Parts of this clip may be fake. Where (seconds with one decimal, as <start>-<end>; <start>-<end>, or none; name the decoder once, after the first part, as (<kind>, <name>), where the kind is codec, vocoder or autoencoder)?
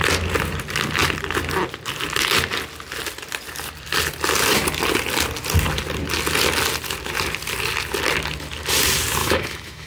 9.2-9.9 (autoencoder, DAC-VAE)